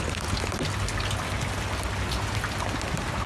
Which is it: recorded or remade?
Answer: recorded